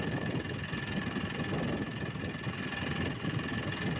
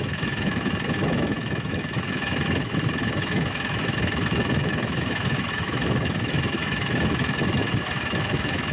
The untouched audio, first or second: first